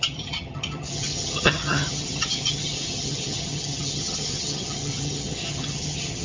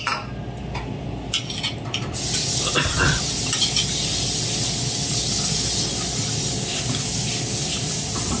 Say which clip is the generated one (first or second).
first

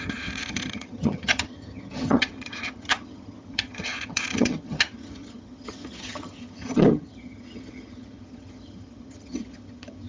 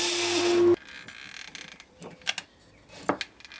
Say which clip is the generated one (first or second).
first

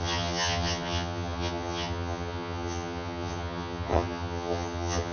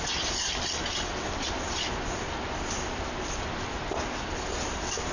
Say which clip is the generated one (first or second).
first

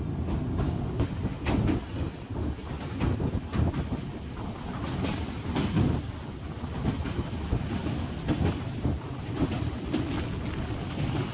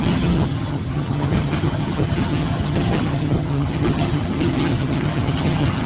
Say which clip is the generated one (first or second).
second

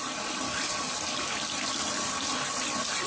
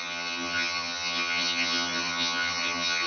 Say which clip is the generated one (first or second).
second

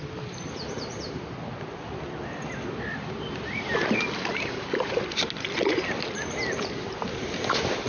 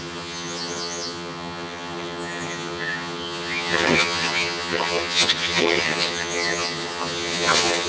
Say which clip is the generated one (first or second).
second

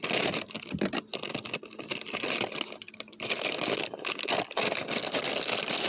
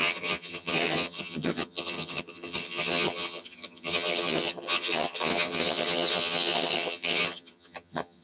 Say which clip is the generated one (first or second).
second